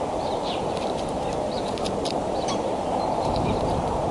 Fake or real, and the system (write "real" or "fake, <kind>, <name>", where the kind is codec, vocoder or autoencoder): fake, vocoder, BigVGAN v2